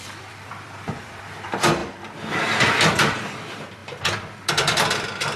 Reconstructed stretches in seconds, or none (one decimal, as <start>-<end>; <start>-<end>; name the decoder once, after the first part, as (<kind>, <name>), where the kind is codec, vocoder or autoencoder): 0.0-1.8 (vocoder, BigVGAN v2); 2.7-5.4